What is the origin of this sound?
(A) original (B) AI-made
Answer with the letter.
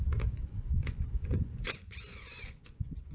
B